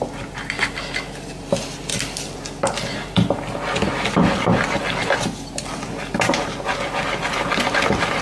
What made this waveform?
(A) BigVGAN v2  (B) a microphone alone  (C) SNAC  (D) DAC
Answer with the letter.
B